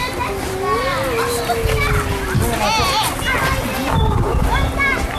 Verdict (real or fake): real